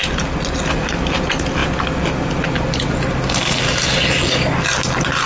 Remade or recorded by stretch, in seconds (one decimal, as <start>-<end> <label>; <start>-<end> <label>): 0.0-5.3 recorded